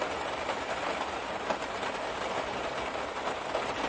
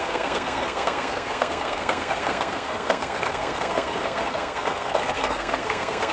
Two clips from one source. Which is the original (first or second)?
first